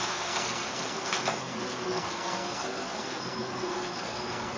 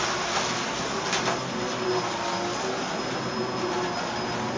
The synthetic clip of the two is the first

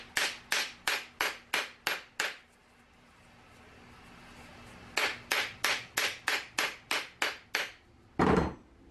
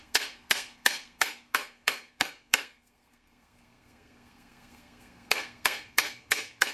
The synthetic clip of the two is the second